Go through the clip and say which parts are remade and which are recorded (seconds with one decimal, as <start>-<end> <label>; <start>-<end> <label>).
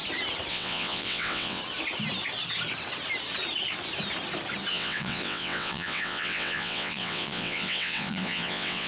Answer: 0.0-0.5 recorded; 0.5-1.6 remade; 1.6-4.7 recorded; 4.7-8.9 remade